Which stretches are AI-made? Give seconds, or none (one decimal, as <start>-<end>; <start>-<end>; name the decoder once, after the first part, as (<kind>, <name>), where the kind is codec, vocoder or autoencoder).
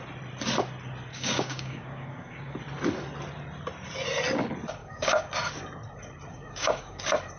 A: 1.1-2.6 (codec, DAC); 4.8-5.3; 6.3-7.0